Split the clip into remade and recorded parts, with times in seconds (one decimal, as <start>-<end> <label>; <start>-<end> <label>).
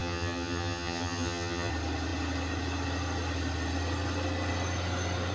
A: 0.0-1.7 remade; 1.7-5.3 recorded